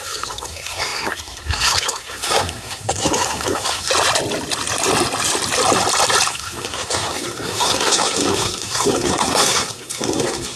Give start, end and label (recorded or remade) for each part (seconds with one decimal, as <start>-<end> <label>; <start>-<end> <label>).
0.0-3.9 remade; 3.9-6.3 recorded; 6.3-10.6 remade